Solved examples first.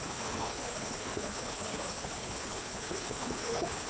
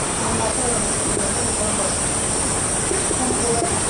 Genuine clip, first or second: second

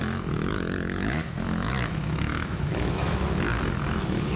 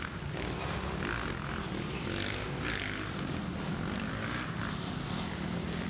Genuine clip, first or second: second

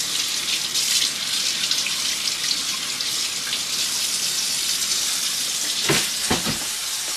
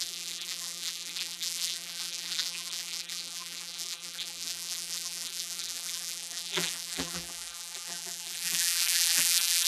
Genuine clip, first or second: first